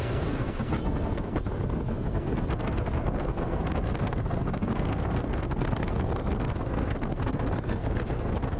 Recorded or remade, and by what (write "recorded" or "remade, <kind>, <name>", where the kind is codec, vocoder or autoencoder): remade, codec, SNAC